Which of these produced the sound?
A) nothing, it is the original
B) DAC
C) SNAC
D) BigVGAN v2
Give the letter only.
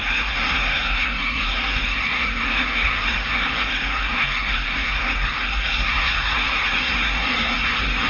C